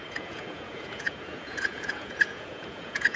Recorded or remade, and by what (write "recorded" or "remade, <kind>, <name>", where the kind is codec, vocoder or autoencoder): remade, vocoder, Vocos